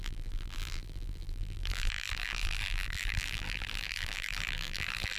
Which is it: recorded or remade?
remade